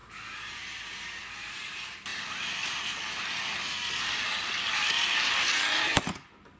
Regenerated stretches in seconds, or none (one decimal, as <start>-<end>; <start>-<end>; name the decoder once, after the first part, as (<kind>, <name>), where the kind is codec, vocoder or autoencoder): none